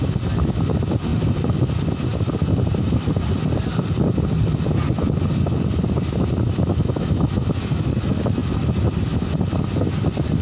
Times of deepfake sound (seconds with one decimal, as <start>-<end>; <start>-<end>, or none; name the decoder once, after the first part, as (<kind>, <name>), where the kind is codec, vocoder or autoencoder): none